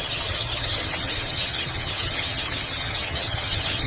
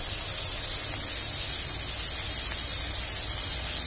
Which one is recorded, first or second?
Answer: second